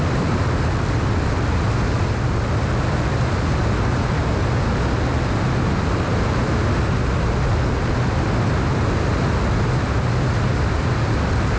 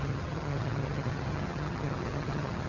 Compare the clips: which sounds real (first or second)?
first